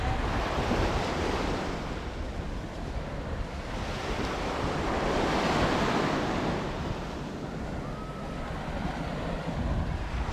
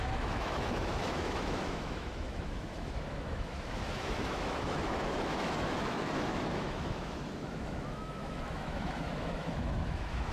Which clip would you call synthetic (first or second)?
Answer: second